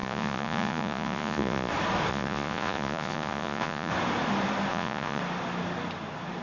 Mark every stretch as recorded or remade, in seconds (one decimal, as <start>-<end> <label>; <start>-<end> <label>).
0.0-1.7 remade; 1.7-2.1 recorded; 2.1-3.9 remade; 3.9-4.7 recorded; 4.7-5.2 remade; 5.2-6.4 recorded